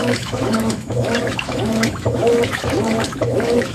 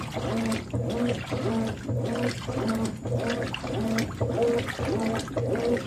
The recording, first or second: second